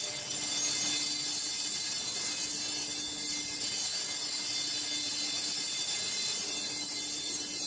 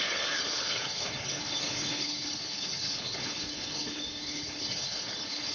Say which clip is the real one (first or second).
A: first